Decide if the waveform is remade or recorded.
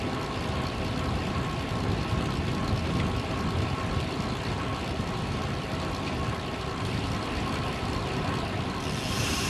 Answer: recorded